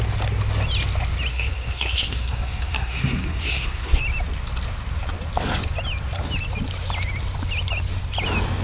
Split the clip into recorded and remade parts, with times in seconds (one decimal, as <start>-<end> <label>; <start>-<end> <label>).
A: 0.0-1.3 recorded; 1.3-4.0 remade; 4.0-8.6 recorded